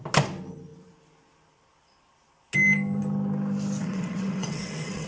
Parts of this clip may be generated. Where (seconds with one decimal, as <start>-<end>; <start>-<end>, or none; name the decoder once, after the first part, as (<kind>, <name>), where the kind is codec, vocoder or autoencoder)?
3.8-5.1 (vocoder, WaveNeXt)